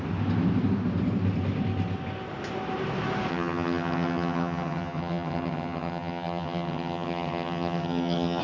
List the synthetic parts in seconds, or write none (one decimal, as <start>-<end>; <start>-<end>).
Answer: 3.3-8.4